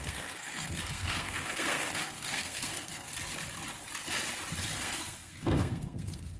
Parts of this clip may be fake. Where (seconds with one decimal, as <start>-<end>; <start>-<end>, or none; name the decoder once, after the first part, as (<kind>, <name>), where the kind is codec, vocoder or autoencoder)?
0.0-3.1 (codec, SNAC); 4.8-6.4